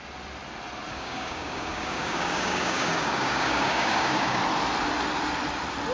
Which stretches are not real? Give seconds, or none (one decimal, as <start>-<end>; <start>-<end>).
0.9-4.4